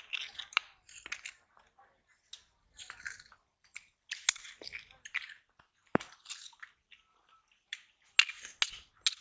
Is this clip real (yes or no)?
yes